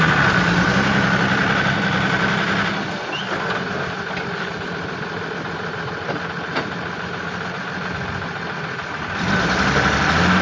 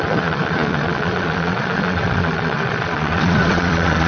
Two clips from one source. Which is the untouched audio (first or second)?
first